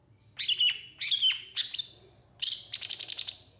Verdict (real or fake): real